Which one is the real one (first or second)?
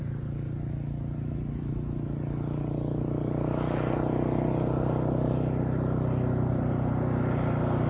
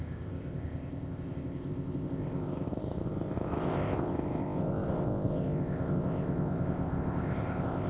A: first